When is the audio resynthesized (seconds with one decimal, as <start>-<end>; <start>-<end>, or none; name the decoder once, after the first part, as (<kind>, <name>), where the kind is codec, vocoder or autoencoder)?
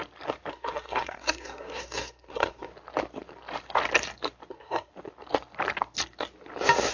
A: 0.5-2.7 (codec, SNAC); 4.5-4.9